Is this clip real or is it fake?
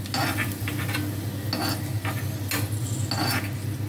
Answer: real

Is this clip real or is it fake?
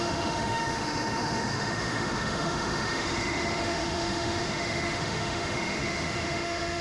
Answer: fake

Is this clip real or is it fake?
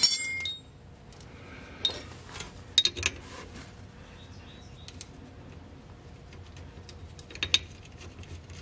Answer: real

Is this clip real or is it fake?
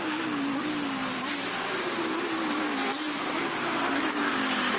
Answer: fake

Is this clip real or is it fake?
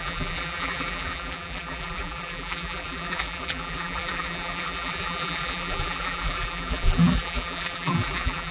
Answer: fake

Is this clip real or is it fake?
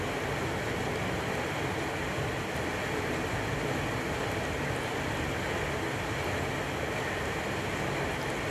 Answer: real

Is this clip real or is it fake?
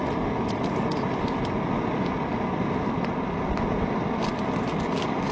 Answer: real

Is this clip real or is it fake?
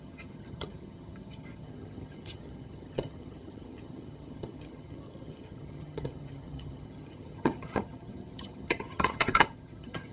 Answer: fake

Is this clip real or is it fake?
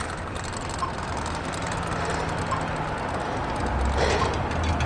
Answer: real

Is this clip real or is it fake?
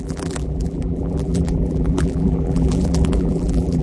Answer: fake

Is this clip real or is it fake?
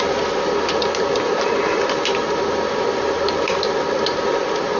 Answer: fake